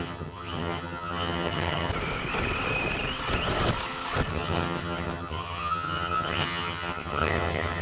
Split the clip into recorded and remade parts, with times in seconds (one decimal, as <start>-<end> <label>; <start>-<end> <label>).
0.0-1.9 remade; 1.9-4.3 recorded; 4.3-7.8 remade